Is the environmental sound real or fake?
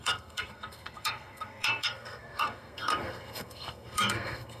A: fake